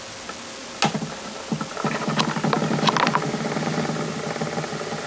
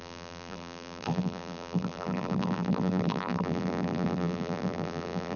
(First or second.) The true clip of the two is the first